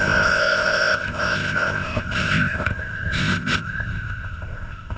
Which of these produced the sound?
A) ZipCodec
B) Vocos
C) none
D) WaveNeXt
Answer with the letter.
A